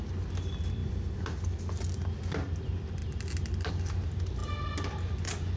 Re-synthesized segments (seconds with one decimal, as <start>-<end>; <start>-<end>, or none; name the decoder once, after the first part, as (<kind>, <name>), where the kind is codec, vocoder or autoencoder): 0.8-1.6 (vocoder, BigVGAN v2)